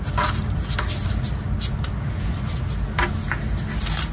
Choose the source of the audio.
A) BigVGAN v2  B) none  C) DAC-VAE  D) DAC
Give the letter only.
B